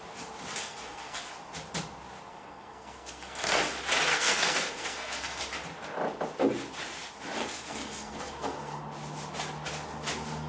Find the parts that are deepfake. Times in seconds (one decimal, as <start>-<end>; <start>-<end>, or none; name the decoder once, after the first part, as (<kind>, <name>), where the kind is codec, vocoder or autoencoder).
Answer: 0.6-1.3 (codec, SNAC); 2.3-3.6; 4.1-5.4; 7.4-8.8